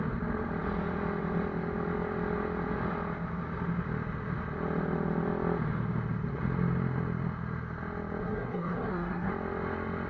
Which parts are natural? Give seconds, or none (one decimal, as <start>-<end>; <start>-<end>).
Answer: 0.0-8.2; 9.3-10.1